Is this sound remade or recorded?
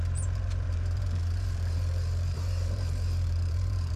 remade